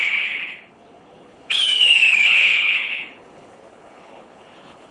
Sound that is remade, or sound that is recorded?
remade